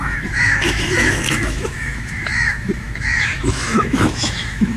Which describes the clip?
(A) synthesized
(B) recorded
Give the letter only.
A